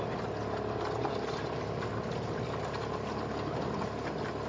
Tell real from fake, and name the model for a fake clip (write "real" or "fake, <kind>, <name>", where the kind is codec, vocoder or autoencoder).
real